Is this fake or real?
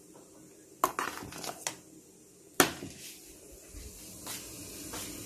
real